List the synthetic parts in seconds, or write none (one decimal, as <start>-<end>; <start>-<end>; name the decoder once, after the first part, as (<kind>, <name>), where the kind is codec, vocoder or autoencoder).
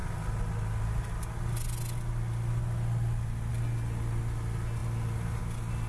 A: none